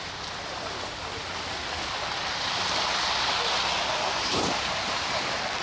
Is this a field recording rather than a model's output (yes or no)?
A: yes